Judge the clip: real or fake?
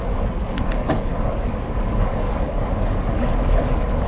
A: fake